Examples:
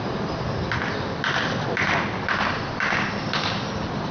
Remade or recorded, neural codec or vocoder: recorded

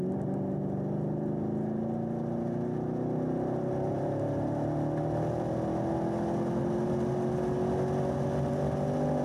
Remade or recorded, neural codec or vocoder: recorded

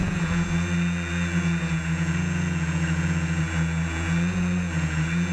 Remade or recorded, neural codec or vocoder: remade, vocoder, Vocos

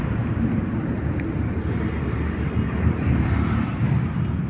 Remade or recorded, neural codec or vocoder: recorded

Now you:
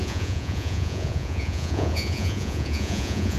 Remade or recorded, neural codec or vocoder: remade, vocoder, Vocos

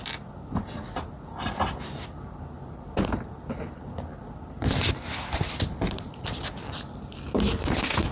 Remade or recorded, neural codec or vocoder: recorded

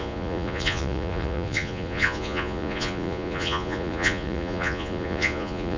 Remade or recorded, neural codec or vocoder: remade, vocoder, Vocos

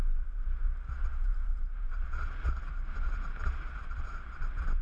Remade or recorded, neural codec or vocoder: recorded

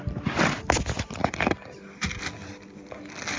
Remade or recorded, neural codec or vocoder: recorded